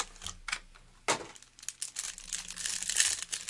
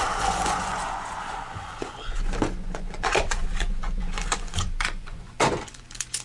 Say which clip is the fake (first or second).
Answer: second